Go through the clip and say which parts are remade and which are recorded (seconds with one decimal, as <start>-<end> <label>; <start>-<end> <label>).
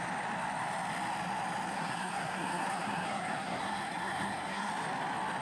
0.0-1.7 recorded; 1.7-4.7 remade; 4.7-5.4 recorded